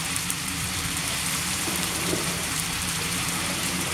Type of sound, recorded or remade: remade